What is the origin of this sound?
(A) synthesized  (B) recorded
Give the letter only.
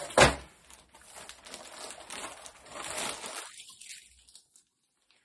B